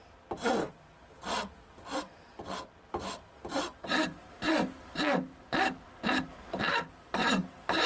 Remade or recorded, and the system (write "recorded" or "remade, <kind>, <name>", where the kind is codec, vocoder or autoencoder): recorded